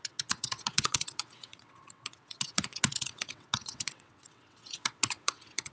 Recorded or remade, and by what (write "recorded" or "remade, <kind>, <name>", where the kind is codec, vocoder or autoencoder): remade, vocoder, WaveNeXt